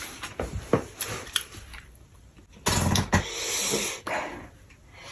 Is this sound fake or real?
real